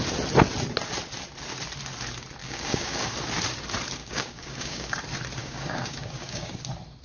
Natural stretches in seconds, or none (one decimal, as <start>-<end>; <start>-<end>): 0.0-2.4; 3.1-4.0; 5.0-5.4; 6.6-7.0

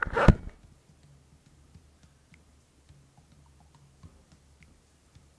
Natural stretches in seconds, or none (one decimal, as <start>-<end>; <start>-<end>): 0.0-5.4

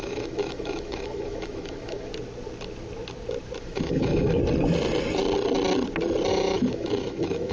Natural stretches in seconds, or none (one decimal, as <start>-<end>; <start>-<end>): 2.1-3.6; 4.4-6.3

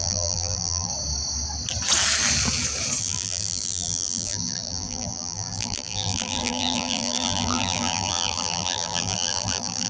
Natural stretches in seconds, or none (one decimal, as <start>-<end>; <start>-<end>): 0.9-3.0

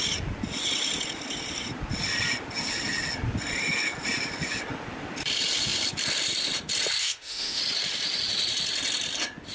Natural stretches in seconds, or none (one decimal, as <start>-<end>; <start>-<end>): 0.0-7.0; 7.6-9.5

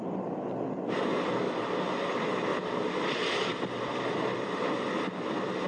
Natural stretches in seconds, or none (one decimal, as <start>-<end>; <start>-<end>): 0.0-2.5; 4.9-5.7

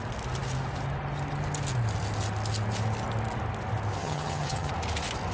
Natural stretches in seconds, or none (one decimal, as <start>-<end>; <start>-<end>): 0.0-4.0; 4.7-5.3

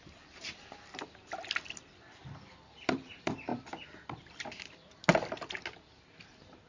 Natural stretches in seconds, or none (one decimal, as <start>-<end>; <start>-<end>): 0.0-6.7